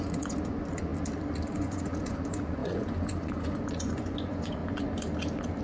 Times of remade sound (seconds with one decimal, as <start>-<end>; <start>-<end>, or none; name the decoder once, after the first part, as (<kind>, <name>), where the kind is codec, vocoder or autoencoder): 0.0-0.9 (vocoder, Vocos); 1.5-4.6